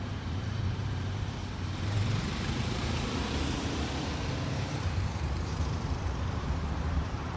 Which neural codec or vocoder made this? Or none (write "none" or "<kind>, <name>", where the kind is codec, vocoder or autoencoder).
vocoder, BigVGAN v2